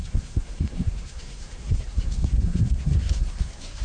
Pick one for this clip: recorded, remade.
remade